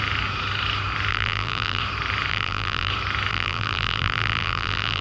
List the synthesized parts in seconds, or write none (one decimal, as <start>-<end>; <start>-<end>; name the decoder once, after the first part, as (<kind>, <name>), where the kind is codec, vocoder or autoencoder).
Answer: 1.1-1.8 (vocoder, BigVGAN v2); 2.3-2.9; 3.3-5.0